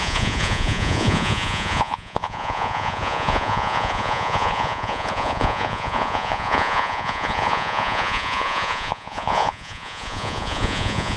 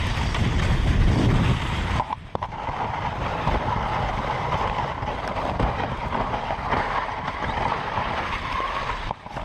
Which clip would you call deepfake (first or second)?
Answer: first